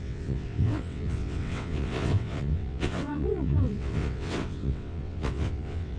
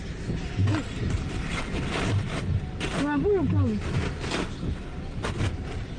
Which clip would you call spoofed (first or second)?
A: first